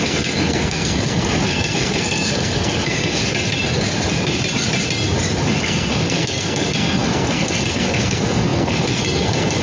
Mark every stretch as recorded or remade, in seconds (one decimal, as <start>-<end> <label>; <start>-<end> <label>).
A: 0.0-3.2 remade; 3.2-5.6 recorded; 5.6-9.6 remade